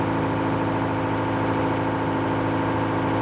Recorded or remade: recorded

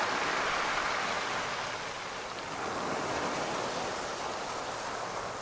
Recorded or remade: recorded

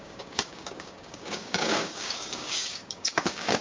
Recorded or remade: remade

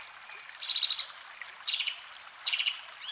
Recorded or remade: recorded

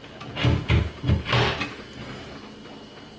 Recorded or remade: recorded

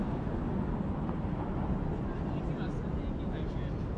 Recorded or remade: recorded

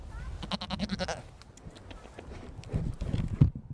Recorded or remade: recorded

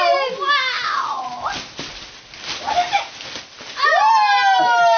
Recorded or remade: recorded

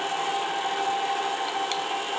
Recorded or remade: recorded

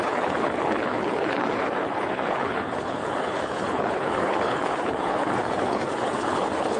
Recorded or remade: remade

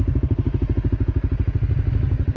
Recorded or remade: recorded